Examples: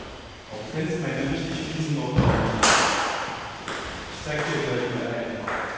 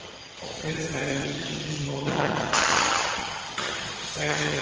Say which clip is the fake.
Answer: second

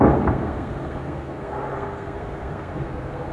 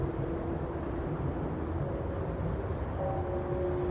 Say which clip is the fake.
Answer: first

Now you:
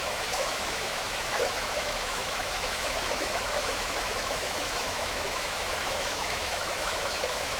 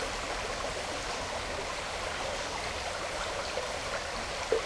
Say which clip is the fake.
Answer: first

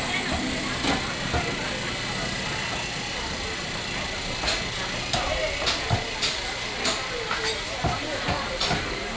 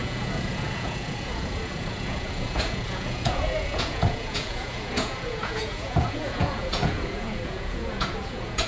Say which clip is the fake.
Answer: second